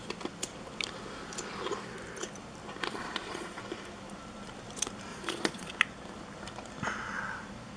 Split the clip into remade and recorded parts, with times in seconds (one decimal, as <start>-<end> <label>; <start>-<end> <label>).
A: 0.0-2.9 recorded; 2.9-3.6 remade; 3.6-5.1 recorded; 5.1-5.7 remade; 5.7-7.8 recorded